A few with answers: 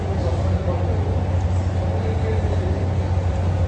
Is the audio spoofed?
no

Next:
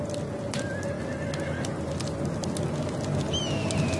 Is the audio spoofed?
no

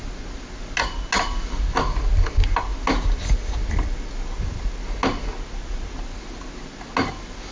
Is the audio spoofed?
no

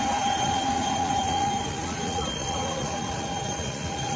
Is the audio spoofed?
yes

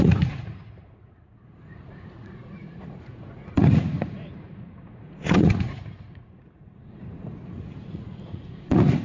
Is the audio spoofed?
yes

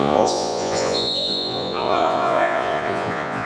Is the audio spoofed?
yes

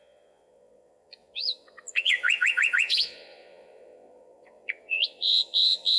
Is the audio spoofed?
yes